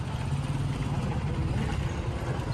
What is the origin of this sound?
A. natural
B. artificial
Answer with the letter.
A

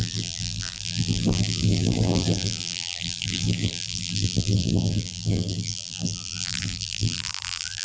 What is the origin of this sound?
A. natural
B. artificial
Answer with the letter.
B